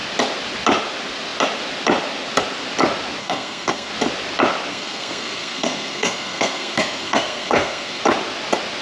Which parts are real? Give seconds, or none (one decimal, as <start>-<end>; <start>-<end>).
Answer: 0.0-3.2; 3.9-4.7; 8.0-8.8